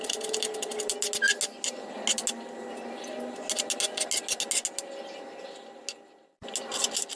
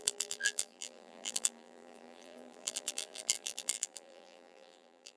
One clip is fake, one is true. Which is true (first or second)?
first